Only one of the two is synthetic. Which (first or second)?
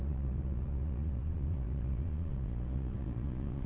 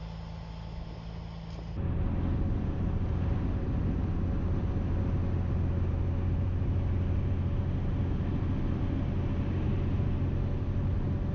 first